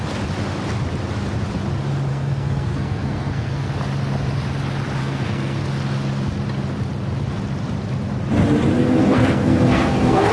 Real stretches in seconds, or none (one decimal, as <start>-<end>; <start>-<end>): 0.0-2.1; 3.7-5.0; 5.6-8.8